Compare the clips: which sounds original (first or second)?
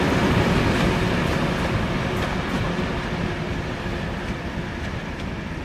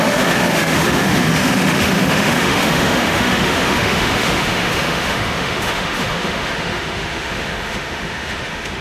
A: first